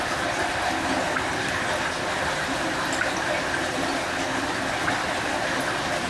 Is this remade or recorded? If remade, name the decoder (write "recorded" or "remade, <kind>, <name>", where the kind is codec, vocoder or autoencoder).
recorded